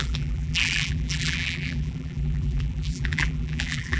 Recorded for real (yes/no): no